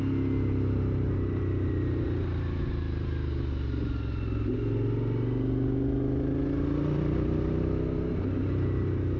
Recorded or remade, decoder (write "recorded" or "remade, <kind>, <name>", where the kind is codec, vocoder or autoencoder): recorded